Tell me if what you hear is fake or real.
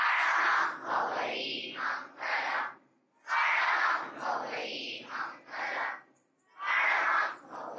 real